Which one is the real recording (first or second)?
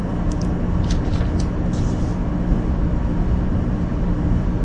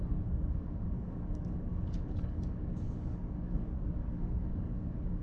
first